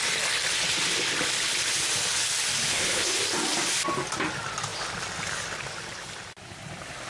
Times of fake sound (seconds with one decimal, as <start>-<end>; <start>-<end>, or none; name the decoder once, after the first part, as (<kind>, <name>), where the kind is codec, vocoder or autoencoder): 2.7-3.2 (codec, HILCodec)